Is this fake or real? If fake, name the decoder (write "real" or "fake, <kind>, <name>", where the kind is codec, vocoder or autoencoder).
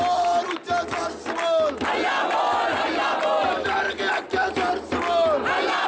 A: real